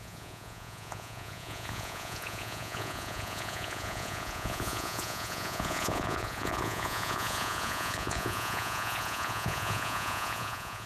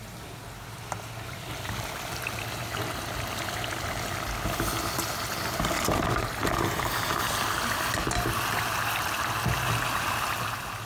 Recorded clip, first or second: second